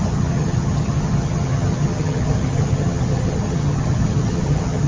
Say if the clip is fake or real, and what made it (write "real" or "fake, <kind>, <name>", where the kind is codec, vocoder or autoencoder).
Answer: fake, vocoder, HiFi-GAN